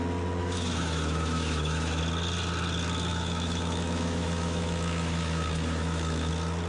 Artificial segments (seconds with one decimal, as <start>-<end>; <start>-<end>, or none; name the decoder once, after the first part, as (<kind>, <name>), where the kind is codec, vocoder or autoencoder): 0.4-2.0 (autoencoder, DAC-VAE); 3.1-6.3